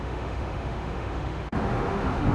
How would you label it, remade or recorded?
remade